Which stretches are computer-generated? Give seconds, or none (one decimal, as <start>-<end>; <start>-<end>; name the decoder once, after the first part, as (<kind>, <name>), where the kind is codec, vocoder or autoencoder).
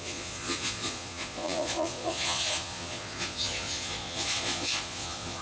0.0-5.4 (vocoder, Vocos)